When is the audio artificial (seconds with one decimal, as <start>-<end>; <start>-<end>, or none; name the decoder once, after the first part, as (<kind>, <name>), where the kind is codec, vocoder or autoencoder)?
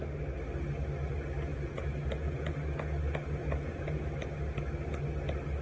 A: 1.5-2.5 (vocoder, Vocos); 3.4-4.0